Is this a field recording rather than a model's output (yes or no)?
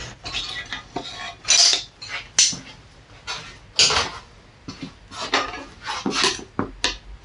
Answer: yes